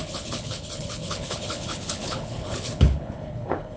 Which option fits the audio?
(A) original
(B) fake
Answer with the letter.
B